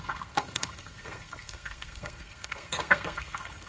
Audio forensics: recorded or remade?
remade